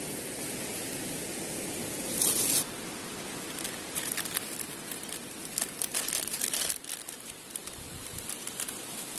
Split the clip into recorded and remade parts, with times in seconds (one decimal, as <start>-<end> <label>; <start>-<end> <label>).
0.0-9.2 recorded